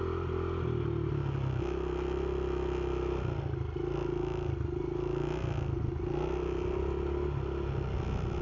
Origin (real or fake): real